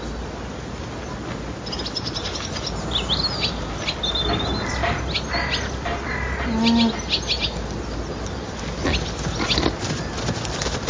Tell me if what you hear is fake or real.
real